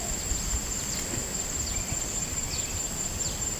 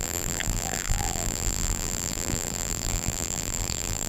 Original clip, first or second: first